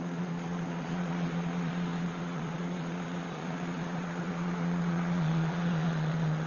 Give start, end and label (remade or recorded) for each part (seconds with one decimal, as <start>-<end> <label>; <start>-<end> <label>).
0.0-6.5 remade